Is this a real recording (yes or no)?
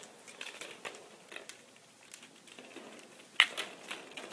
yes